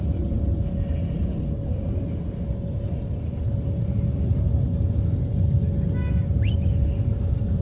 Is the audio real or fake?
real